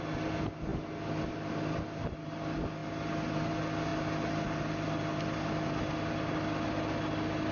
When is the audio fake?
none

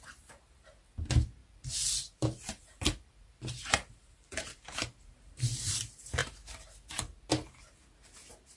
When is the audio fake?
1.4-5.7 (vocoder, BigVGAN v2); 6.2-6.7

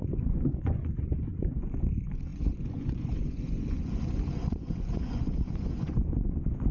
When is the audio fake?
0.0-6.7 (vocoder, Vocos)

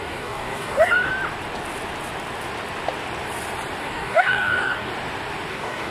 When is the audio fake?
0.0-1.1 (codec, DAC); 3.8-4.9; 5.5-5.9